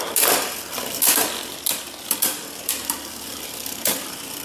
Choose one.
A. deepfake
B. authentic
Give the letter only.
B